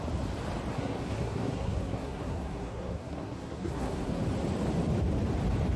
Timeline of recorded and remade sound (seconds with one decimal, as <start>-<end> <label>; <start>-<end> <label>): 0.0-0.7 recorded; 0.7-4.2 remade; 4.2-5.8 recorded